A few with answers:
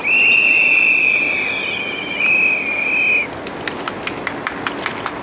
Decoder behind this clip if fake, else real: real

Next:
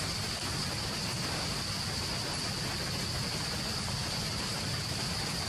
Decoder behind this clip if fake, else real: real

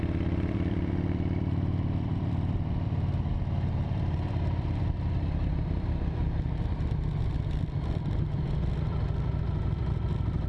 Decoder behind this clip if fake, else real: fake, vocoder, BigVGAN v2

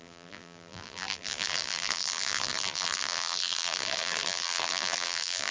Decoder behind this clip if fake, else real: fake, vocoder, BigVGAN v2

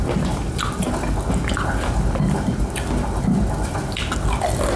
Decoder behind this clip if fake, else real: real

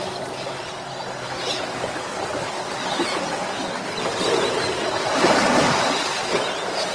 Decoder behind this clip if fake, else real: real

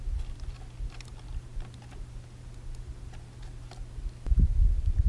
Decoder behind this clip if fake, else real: real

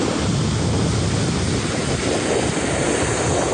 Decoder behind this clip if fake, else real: real